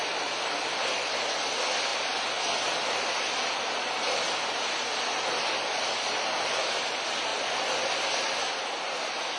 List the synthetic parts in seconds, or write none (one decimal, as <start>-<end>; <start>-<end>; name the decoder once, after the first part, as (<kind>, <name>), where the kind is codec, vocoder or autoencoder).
none